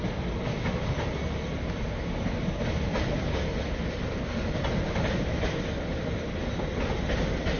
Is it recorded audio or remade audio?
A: recorded